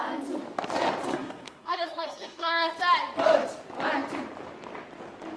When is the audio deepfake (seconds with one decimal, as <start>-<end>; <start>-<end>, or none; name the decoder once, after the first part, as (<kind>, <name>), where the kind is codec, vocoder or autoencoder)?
1.1-2.7 (codec, SNAC)